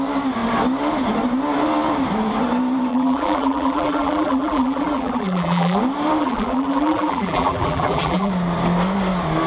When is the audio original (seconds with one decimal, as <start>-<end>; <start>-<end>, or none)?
0.0-2.9; 5.8-6.2; 8.3-9.5